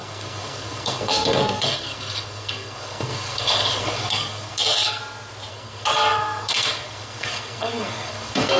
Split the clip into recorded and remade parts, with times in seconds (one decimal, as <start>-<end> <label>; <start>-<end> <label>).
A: 0.0-5.0 remade; 5.0-5.5 recorded; 5.5-8.6 remade